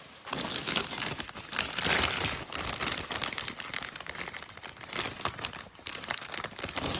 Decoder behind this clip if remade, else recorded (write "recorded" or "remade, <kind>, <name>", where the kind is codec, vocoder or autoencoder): recorded